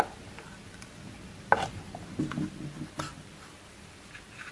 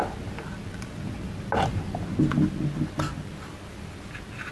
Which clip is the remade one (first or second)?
first